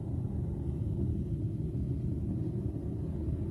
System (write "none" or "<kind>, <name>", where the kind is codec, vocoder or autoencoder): none